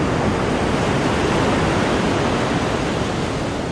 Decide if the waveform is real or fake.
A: real